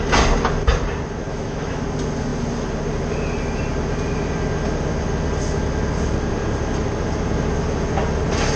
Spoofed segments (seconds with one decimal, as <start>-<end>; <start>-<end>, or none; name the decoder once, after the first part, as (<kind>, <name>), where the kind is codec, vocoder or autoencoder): 1.3-1.8 (autoencoder, DAC-VAE)